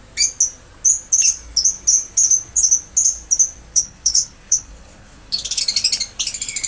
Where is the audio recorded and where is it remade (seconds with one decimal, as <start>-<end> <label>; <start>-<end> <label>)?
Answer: 0.0-3.7 recorded; 3.7-5.6 remade; 5.6-6.7 recorded